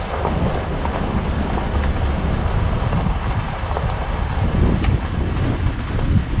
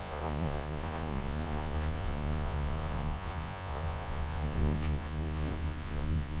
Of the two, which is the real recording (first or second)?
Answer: first